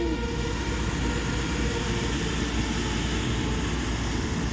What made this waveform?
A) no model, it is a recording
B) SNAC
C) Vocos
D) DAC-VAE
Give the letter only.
A